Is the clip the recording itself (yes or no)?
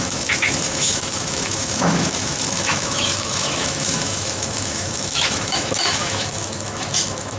no